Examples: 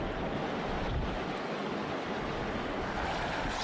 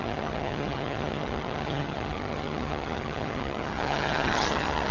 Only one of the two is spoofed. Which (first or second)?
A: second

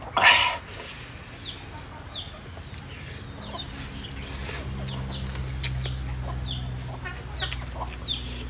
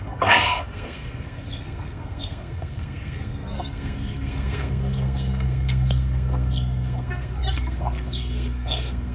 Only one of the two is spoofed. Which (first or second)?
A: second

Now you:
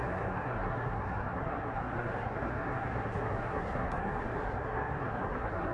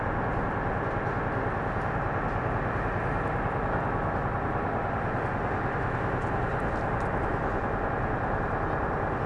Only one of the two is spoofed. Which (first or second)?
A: first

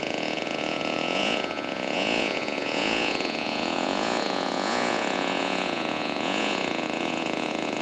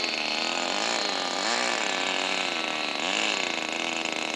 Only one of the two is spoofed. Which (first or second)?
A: first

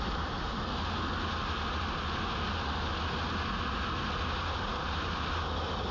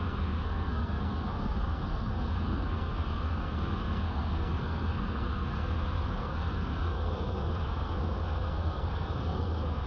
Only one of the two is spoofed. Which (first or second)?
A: second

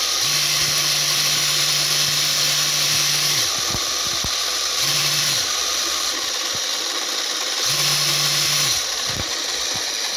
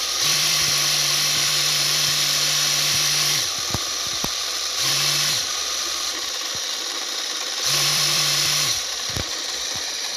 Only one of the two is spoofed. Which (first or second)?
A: second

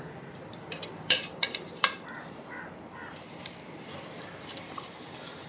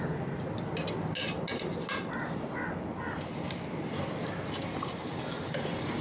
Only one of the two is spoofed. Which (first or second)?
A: first